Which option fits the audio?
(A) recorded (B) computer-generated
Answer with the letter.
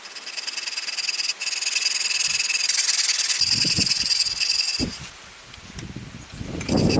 A